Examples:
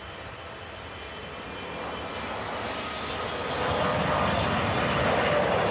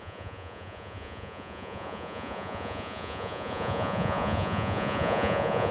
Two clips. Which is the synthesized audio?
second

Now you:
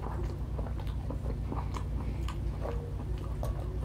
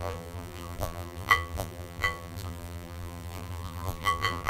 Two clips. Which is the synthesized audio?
second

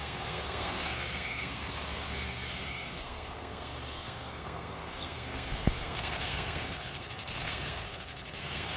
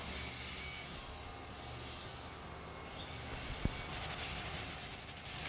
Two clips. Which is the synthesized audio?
first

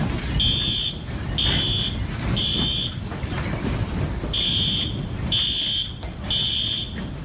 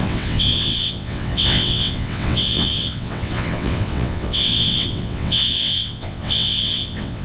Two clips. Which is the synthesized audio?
second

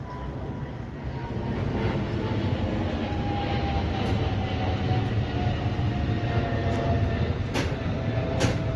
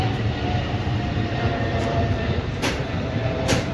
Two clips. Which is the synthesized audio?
second